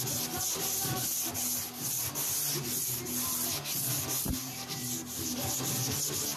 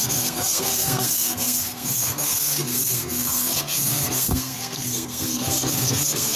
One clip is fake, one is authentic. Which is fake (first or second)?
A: second